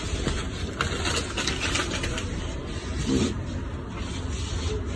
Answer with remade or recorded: recorded